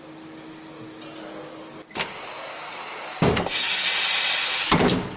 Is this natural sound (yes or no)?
yes